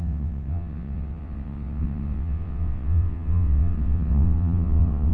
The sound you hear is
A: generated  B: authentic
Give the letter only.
A